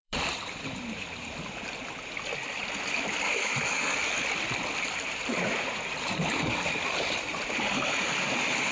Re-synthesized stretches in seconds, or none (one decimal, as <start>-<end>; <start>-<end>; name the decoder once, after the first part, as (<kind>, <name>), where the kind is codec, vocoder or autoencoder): 0.0-0.6 (vocoder, BigVGAN v2)